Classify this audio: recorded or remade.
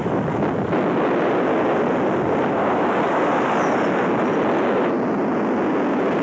recorded